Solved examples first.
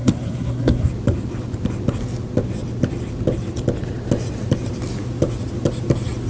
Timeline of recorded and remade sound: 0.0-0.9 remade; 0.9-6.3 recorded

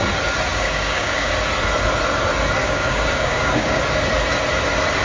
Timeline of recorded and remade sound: 0.0-0.5 recorded; 0.5-1.3 remade; 1.3-2.6 recorded; 2.6-3.8 remade; 3.8-5.0 recorded

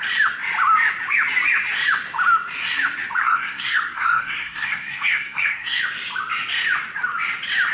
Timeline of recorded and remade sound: 0.0-3.2 recorded; 3.2-5.8 remade; 5.8-7.7 recorded